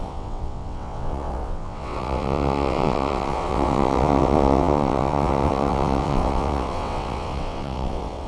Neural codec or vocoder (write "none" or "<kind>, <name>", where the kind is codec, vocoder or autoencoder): vocoder, WaveNeXt